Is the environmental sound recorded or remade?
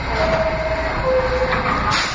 recorded